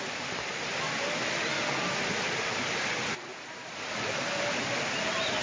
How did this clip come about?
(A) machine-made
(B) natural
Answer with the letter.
B